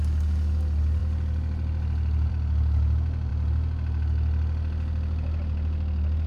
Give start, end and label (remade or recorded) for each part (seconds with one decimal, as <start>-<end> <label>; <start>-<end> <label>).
0.0-1.0 recorded; 1.0-2.3 remade; 2.3-6.3 recorded